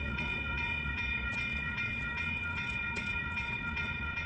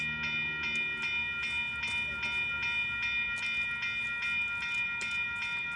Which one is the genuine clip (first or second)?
second